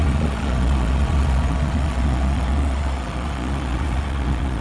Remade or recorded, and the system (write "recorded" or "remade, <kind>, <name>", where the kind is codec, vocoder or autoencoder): remade, vocoder, Vocos